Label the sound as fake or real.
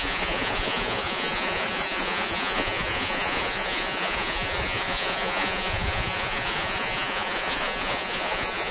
fake